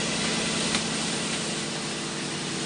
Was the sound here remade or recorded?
recorded